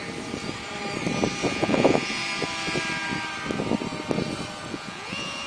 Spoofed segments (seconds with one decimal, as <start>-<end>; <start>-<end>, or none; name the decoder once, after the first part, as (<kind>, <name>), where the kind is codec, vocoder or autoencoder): 1.5-2.2 (vocoder, Vocos); 4.7-5.5